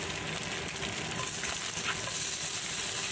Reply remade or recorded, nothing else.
recorded